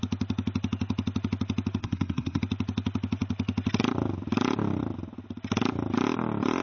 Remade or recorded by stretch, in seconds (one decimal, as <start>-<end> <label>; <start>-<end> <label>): 0.0-1.8 recorded; 1.8-2.4 remade; 2.4-6.6 recorded

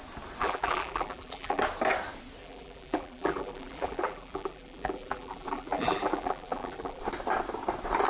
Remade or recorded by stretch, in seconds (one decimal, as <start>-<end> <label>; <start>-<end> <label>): 0.0-0.4 recorded; 0.4-1.6 remade; 1.6-2.4 recorded; 2.4-7.0 remade; 7.0-8.1 recorded

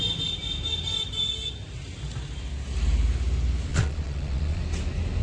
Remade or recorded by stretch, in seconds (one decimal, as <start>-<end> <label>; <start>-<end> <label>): 0.0-3.7 recorded; 3.7-4.6 remade; 4.6-5.2 recorded